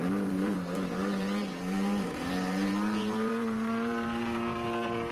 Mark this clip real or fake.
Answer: fake